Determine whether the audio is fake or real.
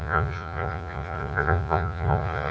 fake